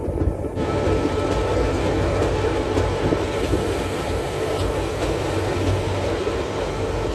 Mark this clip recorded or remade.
recorded